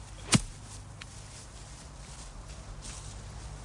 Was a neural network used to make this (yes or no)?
no